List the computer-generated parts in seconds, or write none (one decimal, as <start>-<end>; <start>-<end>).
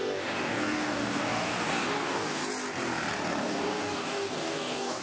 0.0-2.4; 3.4-5.0